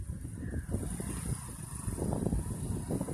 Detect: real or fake real